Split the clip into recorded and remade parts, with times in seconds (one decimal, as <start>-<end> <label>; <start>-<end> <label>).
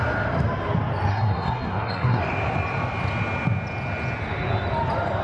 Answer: 0.0-1.1 recorded; 1.1-2.2 remade; 2.2-5.2 recorded